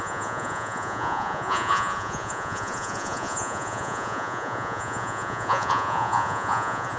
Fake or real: fake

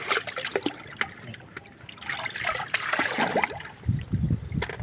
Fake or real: real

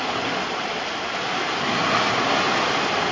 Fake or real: real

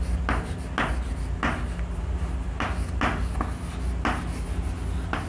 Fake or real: real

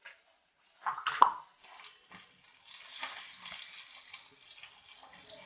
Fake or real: real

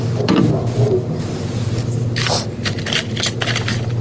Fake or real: real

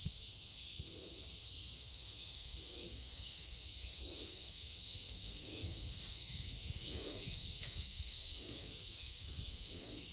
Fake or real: fake